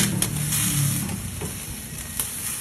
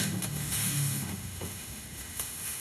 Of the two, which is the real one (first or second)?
first